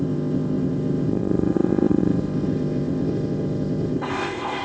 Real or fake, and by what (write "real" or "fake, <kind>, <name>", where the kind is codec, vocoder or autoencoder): fake, codec, ZipCodec